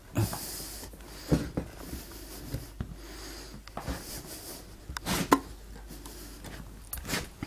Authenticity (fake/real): real